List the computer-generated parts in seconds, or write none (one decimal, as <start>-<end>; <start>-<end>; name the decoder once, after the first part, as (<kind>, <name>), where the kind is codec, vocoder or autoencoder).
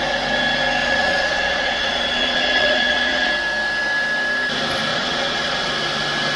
0.8-3.3 (vocoder, Vocos); 4.9-5.7